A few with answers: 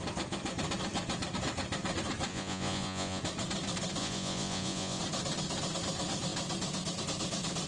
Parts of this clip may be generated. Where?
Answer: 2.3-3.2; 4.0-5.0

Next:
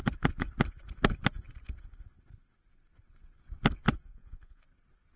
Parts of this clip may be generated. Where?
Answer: 4.1-4.6